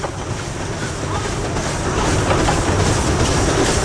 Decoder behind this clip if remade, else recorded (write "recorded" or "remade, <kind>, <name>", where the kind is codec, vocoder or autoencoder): recorded